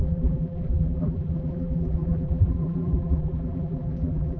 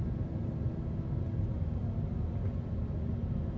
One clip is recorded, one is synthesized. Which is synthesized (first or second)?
first